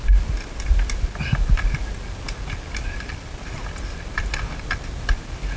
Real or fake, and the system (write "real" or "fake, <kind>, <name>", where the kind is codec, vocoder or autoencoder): real